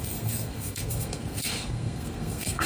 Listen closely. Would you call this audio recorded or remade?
remade